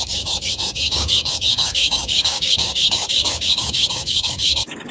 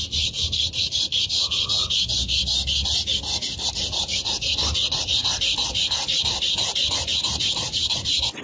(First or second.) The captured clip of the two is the second